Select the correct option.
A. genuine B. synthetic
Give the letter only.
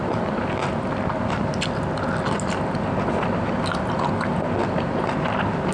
A